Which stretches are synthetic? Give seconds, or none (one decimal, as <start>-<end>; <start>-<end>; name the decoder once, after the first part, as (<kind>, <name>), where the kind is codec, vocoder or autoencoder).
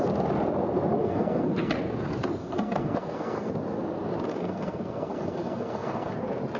1.0-1.7 (codec, SNAC); 2.4-3.5; 4.3-6.1